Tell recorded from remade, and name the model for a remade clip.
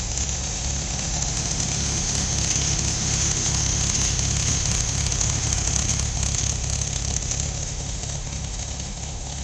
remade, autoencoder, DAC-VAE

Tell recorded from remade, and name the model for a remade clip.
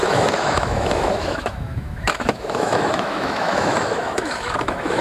remade, autoencoder, DAC-VAE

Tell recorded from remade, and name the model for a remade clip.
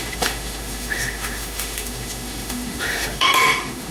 remade, autoencoder, DAC-VAE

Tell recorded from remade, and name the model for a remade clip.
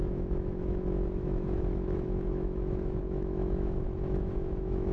remade, autoencoder, DAC-VAE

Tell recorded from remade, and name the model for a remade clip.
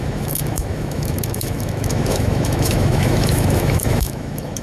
remade, autoencoder, DAC-VAE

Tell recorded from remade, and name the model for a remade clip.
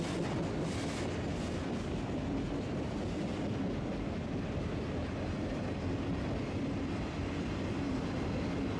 recorded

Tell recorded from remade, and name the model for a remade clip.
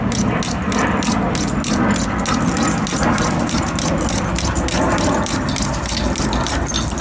recorded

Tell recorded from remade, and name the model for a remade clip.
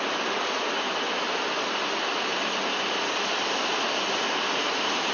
recorded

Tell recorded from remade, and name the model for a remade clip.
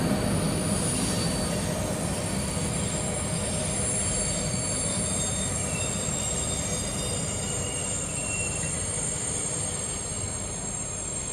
recorded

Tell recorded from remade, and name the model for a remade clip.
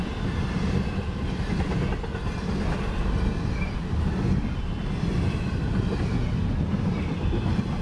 recorded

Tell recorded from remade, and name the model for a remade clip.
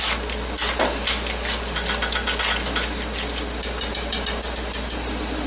recorded